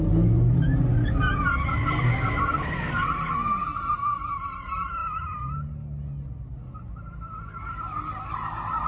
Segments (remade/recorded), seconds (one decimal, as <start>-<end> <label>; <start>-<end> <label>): 0.0-8.9 recorded